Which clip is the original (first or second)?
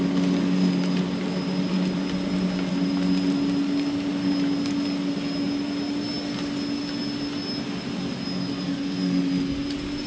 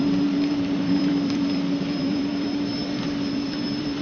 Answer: first